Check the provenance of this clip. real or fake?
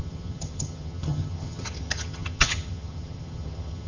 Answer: fake